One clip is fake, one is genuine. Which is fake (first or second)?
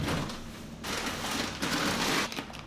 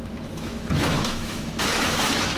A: second